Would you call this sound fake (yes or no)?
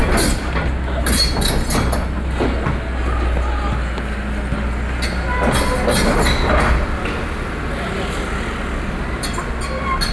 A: no